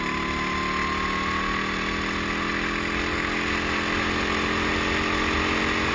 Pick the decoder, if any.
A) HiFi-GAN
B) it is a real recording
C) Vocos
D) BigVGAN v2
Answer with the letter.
B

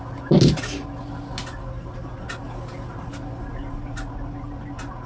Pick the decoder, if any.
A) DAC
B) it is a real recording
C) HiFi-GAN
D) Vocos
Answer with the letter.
B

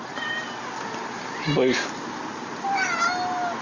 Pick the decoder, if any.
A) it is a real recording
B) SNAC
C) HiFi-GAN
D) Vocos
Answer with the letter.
A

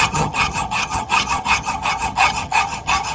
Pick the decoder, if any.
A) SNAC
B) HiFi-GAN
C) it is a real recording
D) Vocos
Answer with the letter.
B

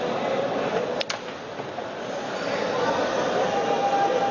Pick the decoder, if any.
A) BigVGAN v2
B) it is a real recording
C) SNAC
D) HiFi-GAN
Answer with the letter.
B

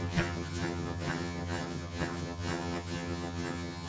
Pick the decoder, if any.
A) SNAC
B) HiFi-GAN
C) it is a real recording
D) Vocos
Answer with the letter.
B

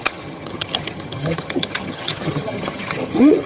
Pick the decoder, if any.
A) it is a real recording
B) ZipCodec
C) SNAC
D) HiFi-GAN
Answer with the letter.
D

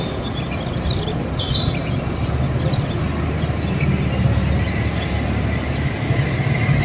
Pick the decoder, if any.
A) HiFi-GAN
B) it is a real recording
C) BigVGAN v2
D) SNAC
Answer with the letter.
B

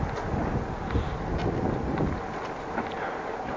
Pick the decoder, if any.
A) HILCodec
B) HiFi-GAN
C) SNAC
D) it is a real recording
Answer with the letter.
D